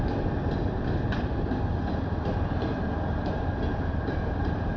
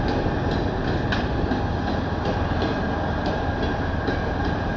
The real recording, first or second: second